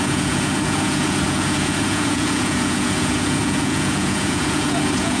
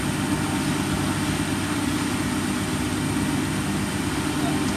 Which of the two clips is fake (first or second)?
first